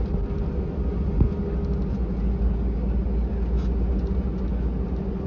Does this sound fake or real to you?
real